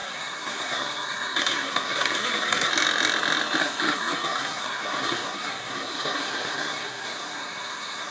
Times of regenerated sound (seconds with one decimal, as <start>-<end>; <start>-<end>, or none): 0.0-2.7; 3.6-8.1